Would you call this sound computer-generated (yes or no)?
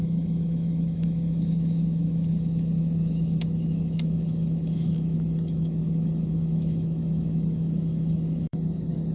yes